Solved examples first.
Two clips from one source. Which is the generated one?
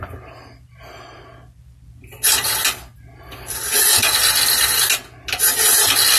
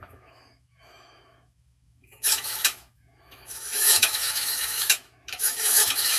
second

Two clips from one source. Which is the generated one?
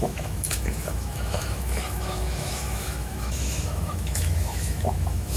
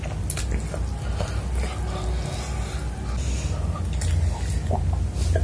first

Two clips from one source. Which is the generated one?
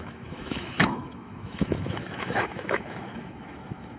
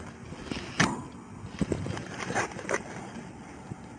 first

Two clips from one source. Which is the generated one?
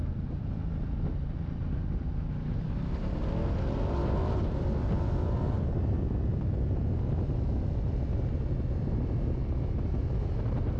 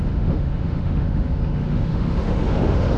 second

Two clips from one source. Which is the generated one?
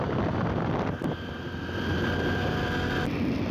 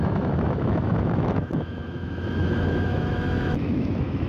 second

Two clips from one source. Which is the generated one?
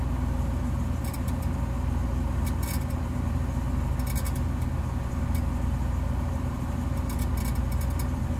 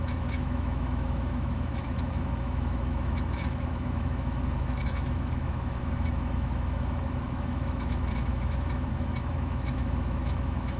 second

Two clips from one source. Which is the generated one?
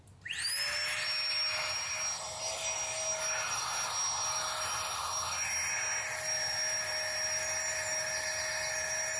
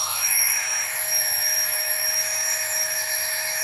second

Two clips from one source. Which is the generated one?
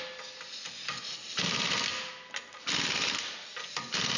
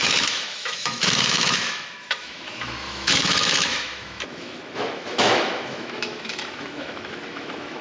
second